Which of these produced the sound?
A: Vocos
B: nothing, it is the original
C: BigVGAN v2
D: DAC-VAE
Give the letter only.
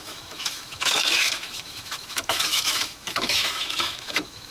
D